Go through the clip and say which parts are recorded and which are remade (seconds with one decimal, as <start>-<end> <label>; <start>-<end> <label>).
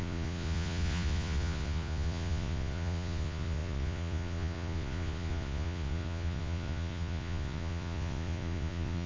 0.0-9.1 remade